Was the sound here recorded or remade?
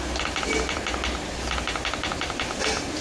recorded